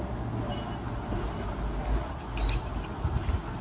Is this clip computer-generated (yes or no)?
no